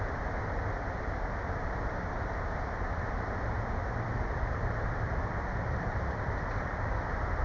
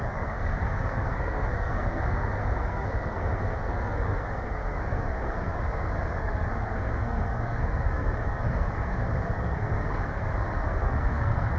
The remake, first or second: second